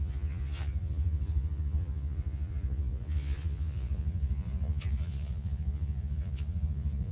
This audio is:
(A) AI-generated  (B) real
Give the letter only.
A